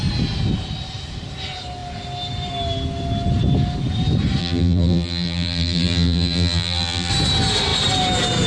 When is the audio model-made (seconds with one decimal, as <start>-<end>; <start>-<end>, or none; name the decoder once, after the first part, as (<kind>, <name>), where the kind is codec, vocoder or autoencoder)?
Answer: 4.4-7.1 (vocoder, BigVGAN v2)